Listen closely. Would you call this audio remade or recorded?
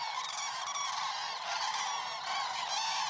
recorded